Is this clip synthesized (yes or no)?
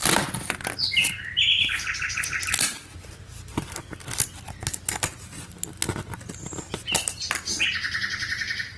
no